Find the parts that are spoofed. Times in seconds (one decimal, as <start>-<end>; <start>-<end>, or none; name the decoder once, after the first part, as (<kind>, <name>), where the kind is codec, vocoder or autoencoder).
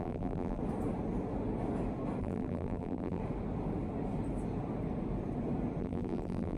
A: 0.0-0.6 (vocoder, BigVGAN v2); 2.2-3.2; 5.8-6.6